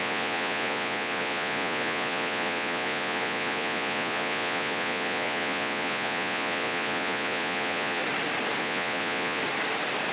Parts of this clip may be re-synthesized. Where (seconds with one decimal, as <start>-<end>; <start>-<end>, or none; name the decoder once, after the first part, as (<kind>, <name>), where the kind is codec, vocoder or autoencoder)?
0.0-8.0 (vocoder, Vocos); 8.6-9.4